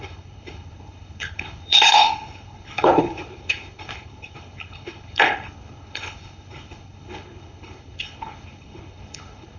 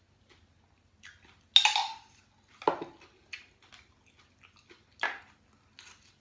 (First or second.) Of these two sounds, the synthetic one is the first